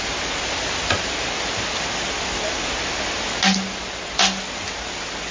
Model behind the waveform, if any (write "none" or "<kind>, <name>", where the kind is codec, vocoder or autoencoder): none